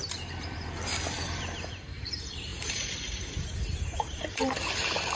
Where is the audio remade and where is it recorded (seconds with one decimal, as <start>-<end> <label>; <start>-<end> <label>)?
0.0-0.9 remade; 0.9-1.7 recorded; 1.7-5.2 remade